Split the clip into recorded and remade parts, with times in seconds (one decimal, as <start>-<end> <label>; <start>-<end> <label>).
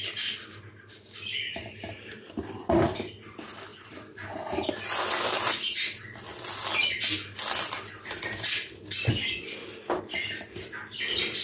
0.0-11.4 recorded